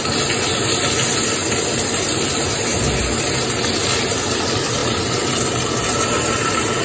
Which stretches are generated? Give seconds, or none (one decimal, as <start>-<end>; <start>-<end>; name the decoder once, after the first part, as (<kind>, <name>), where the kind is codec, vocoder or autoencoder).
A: none